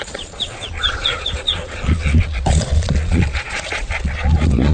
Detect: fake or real fake